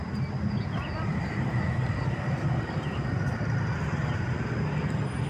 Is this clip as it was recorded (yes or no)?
yes